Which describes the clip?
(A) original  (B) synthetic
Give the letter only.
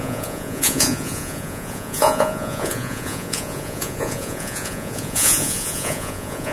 B